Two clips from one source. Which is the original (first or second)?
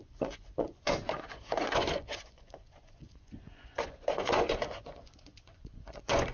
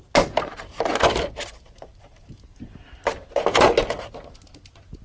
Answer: second